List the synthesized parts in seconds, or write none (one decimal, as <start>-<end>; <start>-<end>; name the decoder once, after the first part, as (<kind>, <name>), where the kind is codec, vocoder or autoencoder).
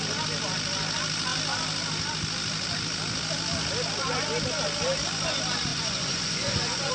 5.7-6.9 (vocoder, Vocos)